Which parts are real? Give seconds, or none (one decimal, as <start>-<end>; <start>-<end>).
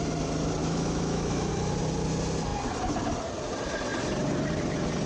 0.0-0.6; 1.5-5.1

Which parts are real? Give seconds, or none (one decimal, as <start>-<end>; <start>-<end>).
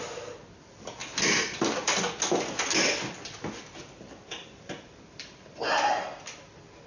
0.0-1.0; 2.1-4.3; 6.1-6.9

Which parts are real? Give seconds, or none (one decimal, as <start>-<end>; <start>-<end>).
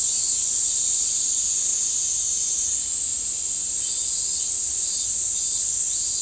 0.0-6.2